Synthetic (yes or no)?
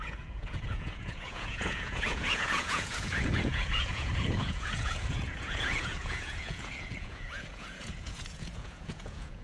yes